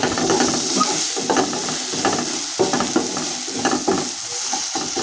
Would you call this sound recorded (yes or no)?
yes